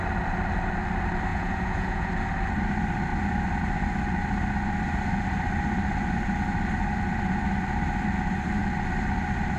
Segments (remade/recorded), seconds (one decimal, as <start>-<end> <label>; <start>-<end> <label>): 0.0-1.3 recorded; 1.3-2.1 remade; 2.1-9.6 recorded